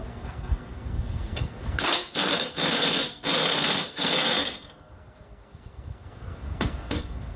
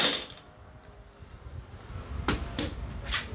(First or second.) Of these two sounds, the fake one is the first